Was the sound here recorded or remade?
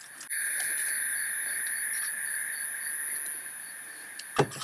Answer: recorded